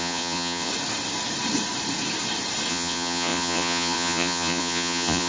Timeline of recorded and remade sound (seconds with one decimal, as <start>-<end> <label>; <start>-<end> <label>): 0.0-0.7 remade; 0.7-2.7 recorded; 2.7-5.3 remade